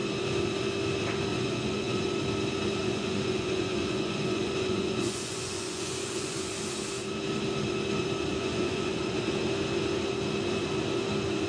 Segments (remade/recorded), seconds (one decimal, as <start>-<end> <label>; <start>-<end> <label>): 0.0-1.3 recorded; 1.3-2.0 remade; 2.0-2.8 recorded; 2.8-6.5 remade; 6.5-8.3 recorded; 8.3-9.2 remade; 9.2-11.5 recorded

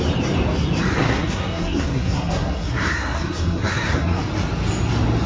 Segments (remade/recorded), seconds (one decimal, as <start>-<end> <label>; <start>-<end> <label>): 0.0-1.0 recorded; 1.0-4.2 remade; 4.2-5.3 recorded

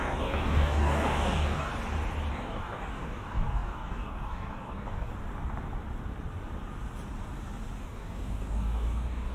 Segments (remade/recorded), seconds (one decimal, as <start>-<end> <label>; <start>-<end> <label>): 0.0-1.7 remade; 1.7-2.3 recorded; 2.3-5.1 remade; 5.1-7.8 recorded; 7.8-9.3 remade